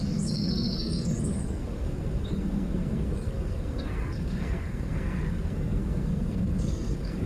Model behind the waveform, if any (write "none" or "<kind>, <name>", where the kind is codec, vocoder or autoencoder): codec, SNAC